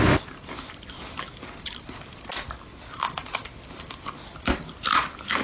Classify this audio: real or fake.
real